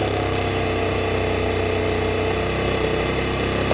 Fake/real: real